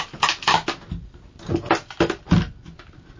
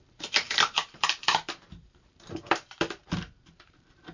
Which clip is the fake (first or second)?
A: second